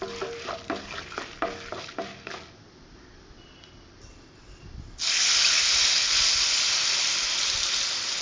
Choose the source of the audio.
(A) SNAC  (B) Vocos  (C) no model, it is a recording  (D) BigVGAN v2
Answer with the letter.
C